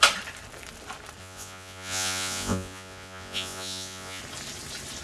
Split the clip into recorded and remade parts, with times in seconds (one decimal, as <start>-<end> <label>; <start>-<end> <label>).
0.0-1.2 recorded; 1.2-4.2 remade; 4.2-5.0 recorded